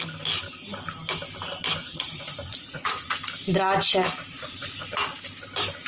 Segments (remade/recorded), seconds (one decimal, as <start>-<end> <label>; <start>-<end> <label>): 0.0-1.8 recorded; 1.8-3.2 remade; 3.2-4.2 recorded; 4.2-5.2 remade; 5.2-5.9 recorded

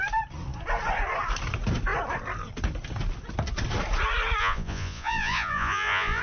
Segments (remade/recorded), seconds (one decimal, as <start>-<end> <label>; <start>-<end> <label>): 0.0-4.4 recorded; 4.4-6.2 remade

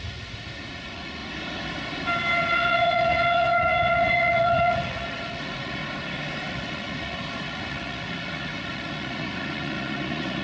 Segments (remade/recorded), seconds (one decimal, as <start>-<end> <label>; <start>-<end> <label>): 0.0-1.2 remade; 1.2-2.5 recorded; 2.5-5.8 remade; 5.8-6.5 recorded; 6.5-10.4 remade

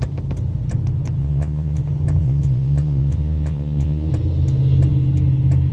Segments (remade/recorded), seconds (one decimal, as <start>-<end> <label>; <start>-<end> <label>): 0.0-1.2 recorded; 1.2-1.8 remade; 1.8-2.2 recorded; 2.2-4.1 remade; 4.1-5.7 recorded

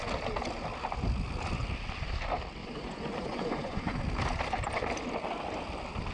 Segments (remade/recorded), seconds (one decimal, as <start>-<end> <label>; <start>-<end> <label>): 0.0-2.6 recorded; 2.6-4.0 remade; 4.0-6.1 recorded

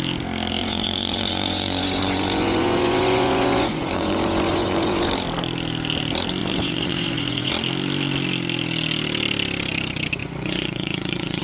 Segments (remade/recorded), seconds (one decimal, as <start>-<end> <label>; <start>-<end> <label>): 0.0-0.6 recorded; 0.6-5.1 remade; 5.1-6.4 recorded; 6.4-7.5 remade; 7.5-10.2 recorded; 10.2-11.4 remade